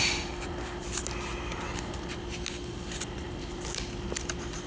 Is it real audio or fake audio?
real